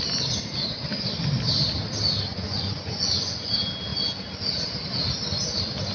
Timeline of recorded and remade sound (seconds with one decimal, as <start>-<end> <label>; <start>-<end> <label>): 0.0-2.3 recorded; 2.3-3.5 remade; 3.5-5.9 recorded